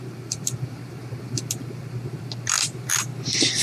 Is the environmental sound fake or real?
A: fake